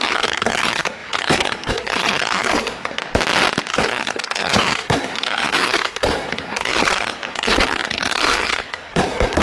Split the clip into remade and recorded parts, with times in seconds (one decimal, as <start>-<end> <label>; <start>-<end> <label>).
0.0-3.0 remade; 3.0-3.7 recorded; 3.7-9.4 remade